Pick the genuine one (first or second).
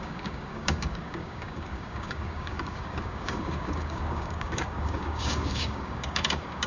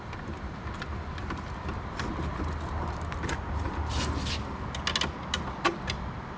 second